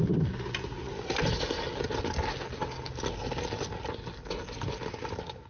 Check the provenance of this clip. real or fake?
real